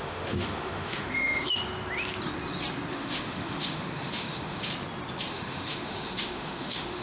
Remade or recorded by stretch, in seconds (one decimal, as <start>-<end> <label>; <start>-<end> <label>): 0.0-1.6 remade; 1.6-2.9 recorded; 2.9-4.7 remade; 4.7-5.3 recorded; 5.3-7.0 remade